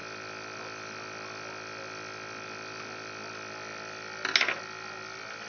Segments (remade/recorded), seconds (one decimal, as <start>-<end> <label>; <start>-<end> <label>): 0.0-5.5 recorded